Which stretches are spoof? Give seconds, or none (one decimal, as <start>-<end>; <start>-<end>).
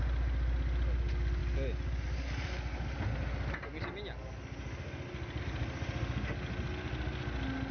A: none